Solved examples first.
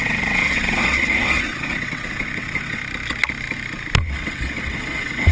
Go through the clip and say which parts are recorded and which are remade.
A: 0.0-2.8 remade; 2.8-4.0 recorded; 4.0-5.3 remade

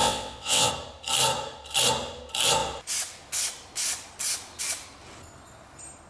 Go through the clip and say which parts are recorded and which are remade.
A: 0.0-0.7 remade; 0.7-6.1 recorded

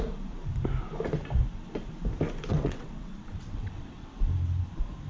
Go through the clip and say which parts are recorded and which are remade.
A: 0.0-2.5 recorded; 2.5-4.2 remade; 4.2-5.1 recorded